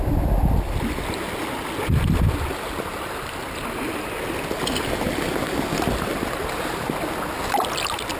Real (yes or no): yes